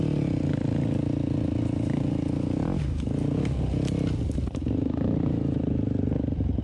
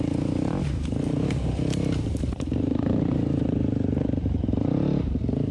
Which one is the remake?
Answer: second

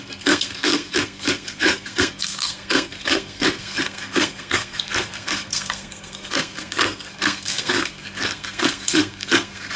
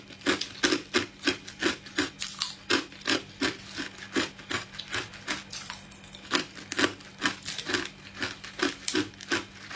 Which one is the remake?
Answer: first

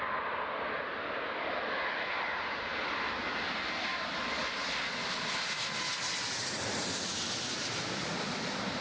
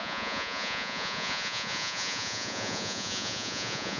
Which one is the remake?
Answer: second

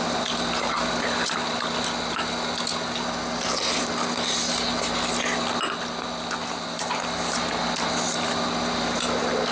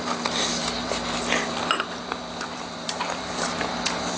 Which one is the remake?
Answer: second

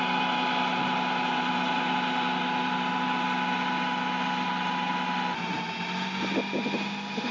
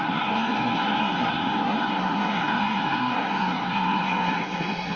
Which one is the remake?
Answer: second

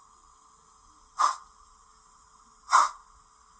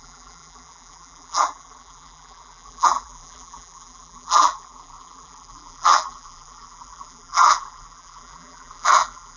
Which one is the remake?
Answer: second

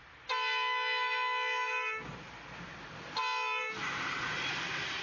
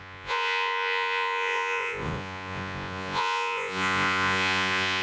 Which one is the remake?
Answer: second